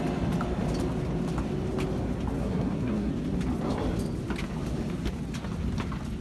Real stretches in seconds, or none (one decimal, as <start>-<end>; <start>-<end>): 0.0-2.4; 3.1-6.2